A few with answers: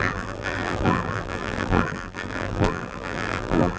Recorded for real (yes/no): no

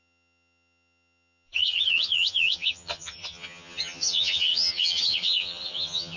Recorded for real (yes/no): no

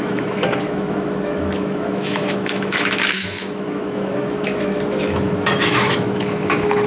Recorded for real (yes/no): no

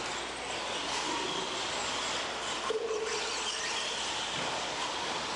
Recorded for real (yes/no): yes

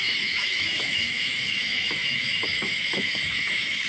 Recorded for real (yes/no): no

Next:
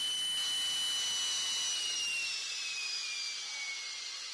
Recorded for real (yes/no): yes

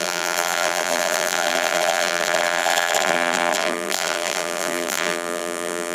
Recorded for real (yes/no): no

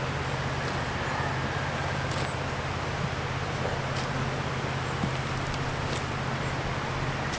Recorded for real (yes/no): yes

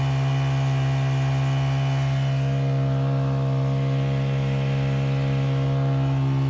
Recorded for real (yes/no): yes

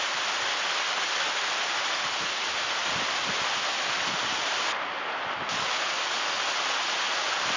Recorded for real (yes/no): yes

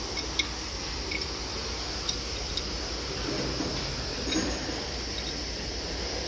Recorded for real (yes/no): yes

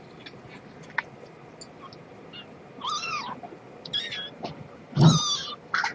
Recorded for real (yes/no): yes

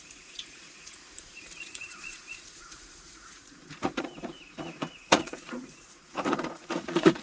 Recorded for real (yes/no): no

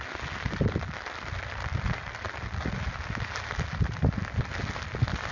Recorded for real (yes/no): yes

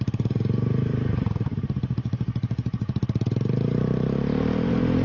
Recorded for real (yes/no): no